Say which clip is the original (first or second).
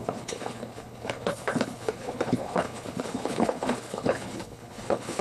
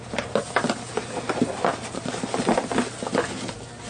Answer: second